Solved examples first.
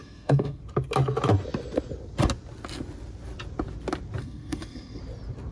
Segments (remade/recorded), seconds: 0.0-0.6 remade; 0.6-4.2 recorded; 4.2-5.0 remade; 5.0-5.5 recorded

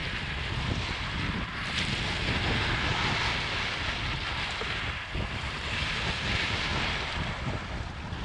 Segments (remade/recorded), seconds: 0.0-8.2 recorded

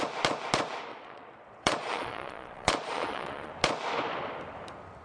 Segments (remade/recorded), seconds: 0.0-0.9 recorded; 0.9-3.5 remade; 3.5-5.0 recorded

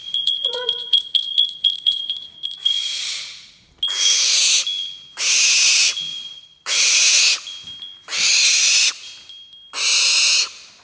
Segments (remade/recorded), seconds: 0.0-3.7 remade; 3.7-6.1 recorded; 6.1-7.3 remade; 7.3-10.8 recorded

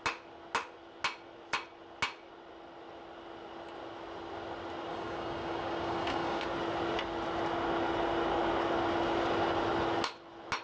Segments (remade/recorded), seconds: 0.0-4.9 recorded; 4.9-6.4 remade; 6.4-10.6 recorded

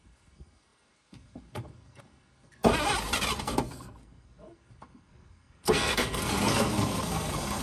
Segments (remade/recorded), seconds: 0.0-2.7 remade; 2.7-3.4 recorded; 3.4-7.6 remade